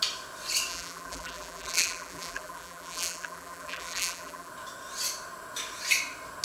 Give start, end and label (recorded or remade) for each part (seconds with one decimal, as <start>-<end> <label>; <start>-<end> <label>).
0.0-0.7 recorded; 0.7-4.5 remade; 4.5-6.4 recorded